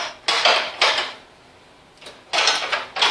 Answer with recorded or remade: recorded